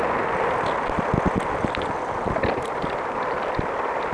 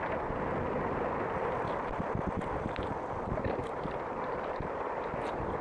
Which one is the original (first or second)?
first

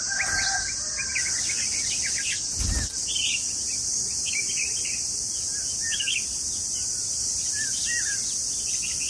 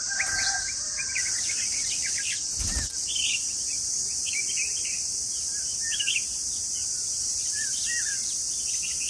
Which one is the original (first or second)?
first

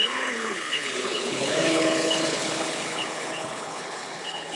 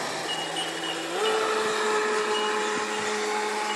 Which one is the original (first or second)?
second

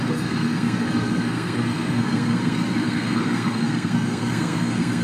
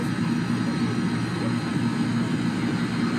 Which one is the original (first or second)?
second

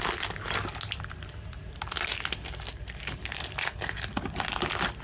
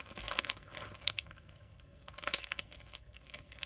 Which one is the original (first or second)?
first